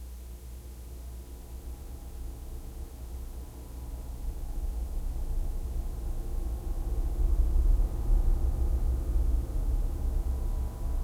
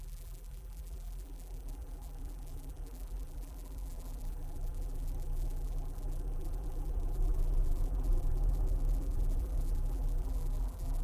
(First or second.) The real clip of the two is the first